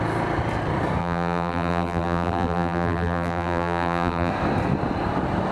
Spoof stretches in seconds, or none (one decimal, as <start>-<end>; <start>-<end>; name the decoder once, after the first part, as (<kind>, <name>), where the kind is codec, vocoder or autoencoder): 1.0-4.3 (vocoder, BigVGAN v2)